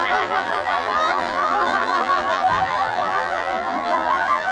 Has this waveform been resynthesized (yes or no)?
yes